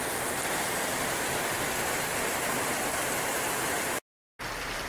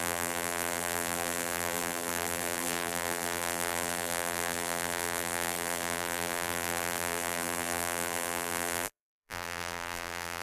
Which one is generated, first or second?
second